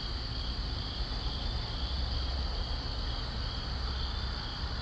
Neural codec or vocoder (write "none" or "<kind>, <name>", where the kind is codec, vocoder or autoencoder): none